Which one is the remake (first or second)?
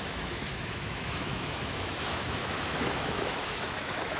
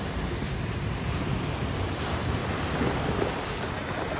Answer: first